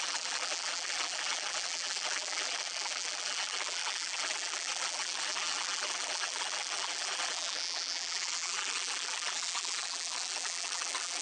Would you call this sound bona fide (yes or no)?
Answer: no